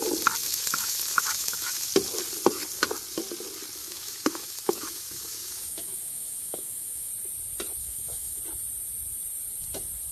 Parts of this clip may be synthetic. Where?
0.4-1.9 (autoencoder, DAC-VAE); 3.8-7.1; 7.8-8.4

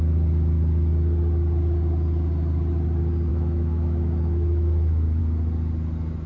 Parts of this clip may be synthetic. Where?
3.3-5.2 (autoencoder, DAC-VAE)

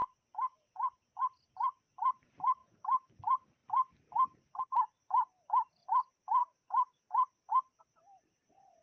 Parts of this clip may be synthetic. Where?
2.6-3.1 (autoencoder, DAC-VAE); 6.4-7.3

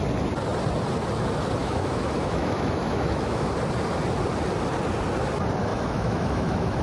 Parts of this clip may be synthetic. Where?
1.6-3.5 (autoencoder, DAC-VAE); 5.7-6.8

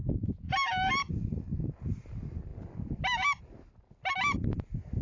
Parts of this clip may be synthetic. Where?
1.0-1.7 (autoencoder, DAC-VAE)

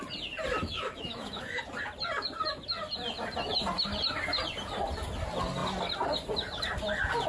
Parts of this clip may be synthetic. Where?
0.6-1.6 (autoencoder, DAC-VAE)